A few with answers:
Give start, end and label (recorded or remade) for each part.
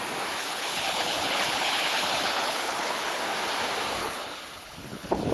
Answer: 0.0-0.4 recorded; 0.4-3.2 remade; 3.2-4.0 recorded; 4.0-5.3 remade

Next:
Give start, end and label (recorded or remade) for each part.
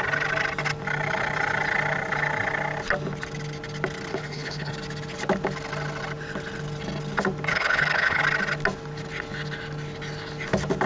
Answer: 0.0-4.1 recorded; 4.1-4.7 remade; 4.7-7.5 recorded; 7.5-8.2 remade; 8.2-10.9 recorded